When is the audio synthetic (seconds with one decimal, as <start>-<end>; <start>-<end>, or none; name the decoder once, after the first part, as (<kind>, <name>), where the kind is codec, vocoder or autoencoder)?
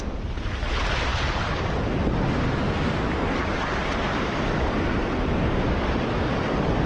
none